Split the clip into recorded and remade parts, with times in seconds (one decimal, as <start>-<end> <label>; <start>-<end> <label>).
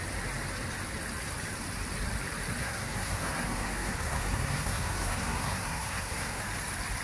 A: 0.0-2.6 recorded; 2.6-6.4 remade; 6.4-7.0 recorded